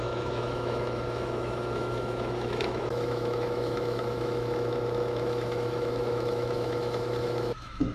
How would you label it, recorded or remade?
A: remade